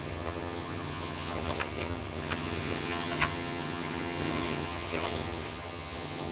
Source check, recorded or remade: remade